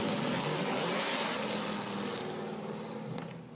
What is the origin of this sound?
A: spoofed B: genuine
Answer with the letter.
B